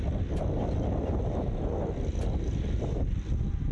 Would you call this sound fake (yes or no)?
no